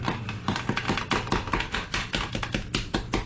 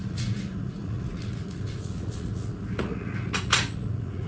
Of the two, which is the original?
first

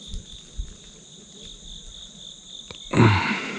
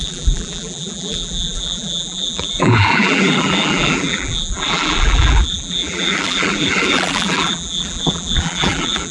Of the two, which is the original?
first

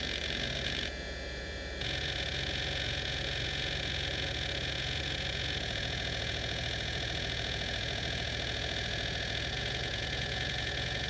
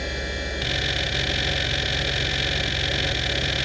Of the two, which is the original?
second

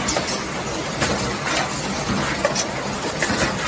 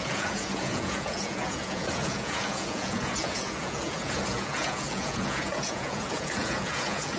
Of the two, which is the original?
first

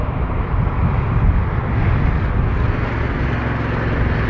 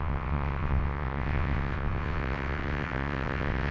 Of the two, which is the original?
first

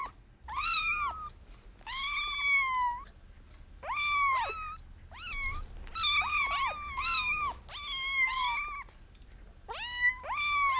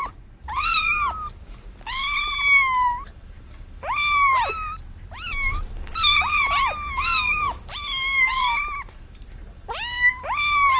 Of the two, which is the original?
first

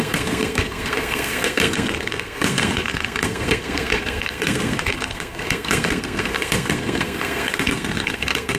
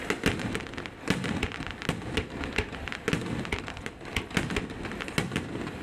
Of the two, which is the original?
second